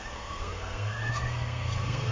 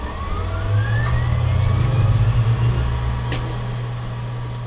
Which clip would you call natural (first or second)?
second